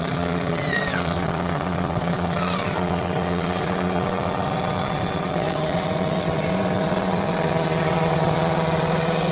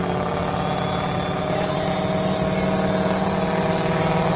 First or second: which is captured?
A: second